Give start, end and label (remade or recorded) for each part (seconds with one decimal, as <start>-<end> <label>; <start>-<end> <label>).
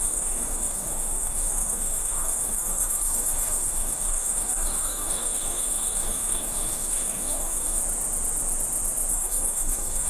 0.0-7.8 remade; 7.8-9.1 recorded; 9.1-10.1 remade